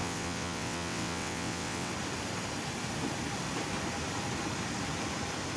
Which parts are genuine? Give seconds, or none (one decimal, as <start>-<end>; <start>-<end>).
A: 1.9-5.6